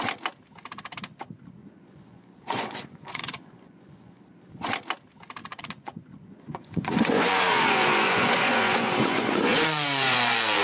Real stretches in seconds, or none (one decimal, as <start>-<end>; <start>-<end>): 0.0-1.6; 4.2-5.4

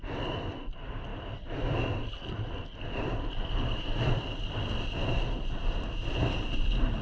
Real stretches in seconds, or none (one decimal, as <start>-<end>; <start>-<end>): 0.0-7.0

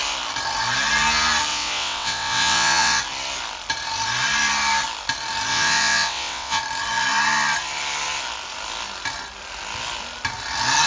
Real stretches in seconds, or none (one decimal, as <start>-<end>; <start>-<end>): 0.0-1.5; 3.0-5.5; 6.6-10.9

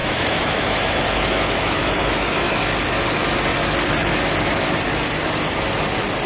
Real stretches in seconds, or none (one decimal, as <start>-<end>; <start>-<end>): 2.6-6.3

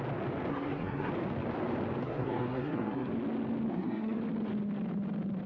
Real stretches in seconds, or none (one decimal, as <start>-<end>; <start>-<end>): 0.0-0.5; 1.1-2.0; 3.1-3.7; 4.2-5.5

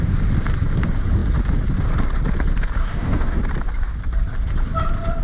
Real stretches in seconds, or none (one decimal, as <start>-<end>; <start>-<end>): 0.0-2.8; 3.4-5.2